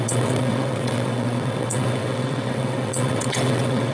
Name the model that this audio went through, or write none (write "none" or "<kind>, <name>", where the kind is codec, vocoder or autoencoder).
vocoder, WaveNeXt